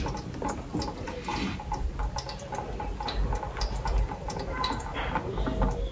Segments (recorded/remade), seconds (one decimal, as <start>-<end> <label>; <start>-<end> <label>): 0.0-5.9 recorded